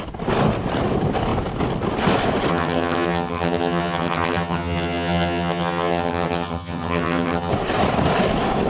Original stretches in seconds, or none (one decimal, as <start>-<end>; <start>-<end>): 0.0-2.5; 7.5-8.7